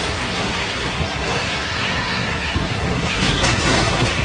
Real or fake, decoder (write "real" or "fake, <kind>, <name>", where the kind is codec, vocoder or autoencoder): fake, codec, SNAC